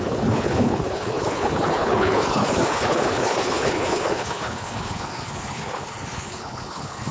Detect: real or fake fake